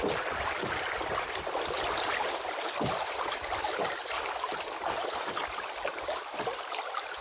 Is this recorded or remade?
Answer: recorded